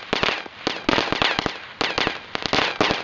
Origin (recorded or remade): recorded